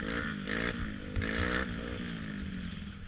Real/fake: real